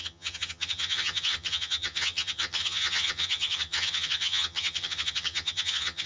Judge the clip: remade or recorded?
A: remade